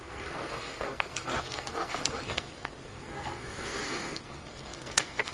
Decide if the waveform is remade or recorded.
remade